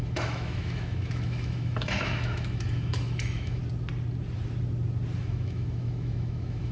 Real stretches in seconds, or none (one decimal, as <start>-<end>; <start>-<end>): 3.6-5.2